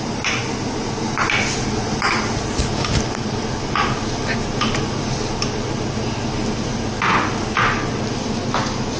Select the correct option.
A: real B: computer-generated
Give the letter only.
A